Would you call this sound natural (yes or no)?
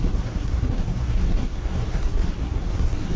no